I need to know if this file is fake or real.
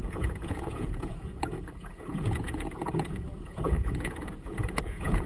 fake